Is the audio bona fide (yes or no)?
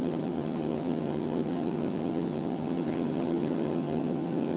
no